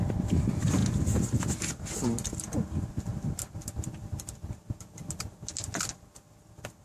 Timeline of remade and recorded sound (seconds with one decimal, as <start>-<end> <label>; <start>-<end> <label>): 0.0-6.8 recorded